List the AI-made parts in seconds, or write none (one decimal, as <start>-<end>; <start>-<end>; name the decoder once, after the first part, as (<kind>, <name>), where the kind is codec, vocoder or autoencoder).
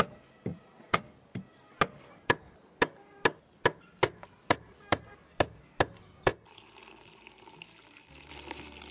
0.5-1.0 (vocoder, Vocos)